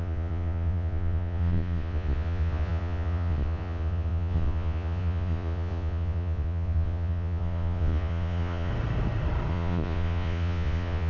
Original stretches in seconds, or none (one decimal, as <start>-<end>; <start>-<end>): 8.7-9.5